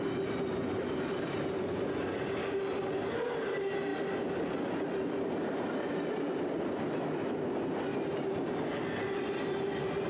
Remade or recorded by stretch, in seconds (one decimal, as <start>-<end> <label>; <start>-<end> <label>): 0.0-3.9 recorded; 3.9-5.5 remade; 5.5-10.1 recorded